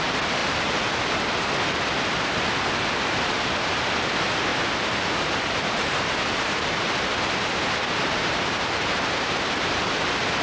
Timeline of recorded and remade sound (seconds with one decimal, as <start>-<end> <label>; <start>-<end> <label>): 0.0-4.5 recorded; 4.5-9.6 remade; 9.6-10.4 recorded